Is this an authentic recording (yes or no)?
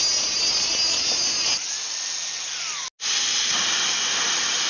yes